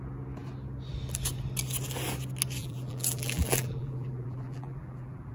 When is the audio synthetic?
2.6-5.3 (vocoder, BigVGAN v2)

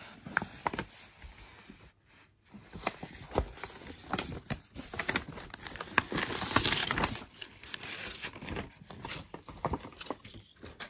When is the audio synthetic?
0.6-1.7 (vocoder, BigVGAN v2); 6.8-10.9